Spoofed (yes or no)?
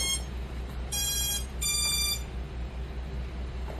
yes